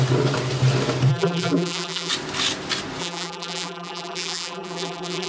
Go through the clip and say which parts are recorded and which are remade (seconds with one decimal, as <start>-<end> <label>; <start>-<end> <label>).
0.0-1.1 recorded; 1.1-2.1 remade; 2.1-3.0 recorded; 3.0-5.3 remade